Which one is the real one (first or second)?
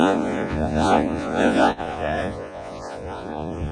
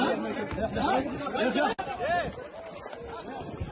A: second